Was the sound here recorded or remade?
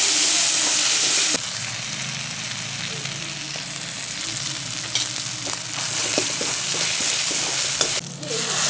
recorded